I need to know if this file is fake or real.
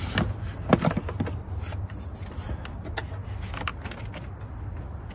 real